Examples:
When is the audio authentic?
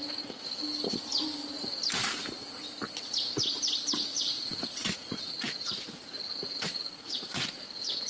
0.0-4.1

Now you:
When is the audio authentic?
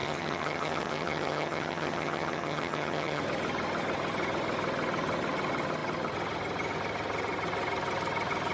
3.2-8.5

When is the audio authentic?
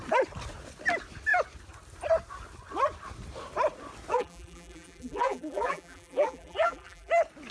0.0-4.1; 7.1-7.5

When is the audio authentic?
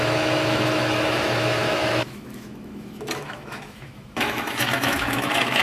none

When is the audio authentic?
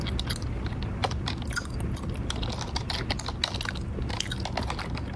0.0-5.2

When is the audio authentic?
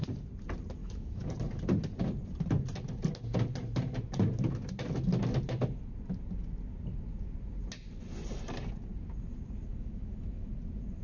0.0-0.8; 1.3-9.7; 10.5-11.0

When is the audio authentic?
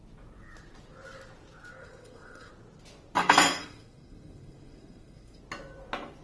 0.0-1.8; 2.5-3.2; 5.4-6.2